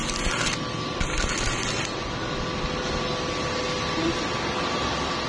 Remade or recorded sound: recorded